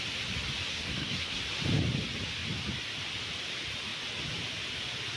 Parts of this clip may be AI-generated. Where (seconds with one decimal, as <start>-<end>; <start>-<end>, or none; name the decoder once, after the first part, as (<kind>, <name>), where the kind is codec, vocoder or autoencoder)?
0.7-1.4 (codec, SNAC)